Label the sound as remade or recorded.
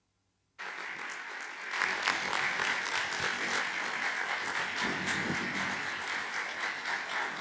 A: recorded